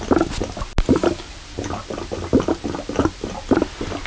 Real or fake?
real